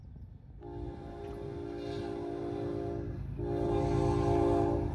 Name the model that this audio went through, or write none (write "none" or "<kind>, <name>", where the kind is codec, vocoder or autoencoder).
none